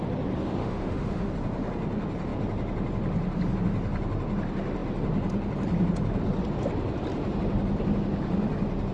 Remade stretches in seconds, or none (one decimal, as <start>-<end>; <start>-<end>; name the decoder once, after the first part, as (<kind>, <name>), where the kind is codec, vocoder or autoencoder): 0.6-1.3 (autoencoder, DAC-VAE)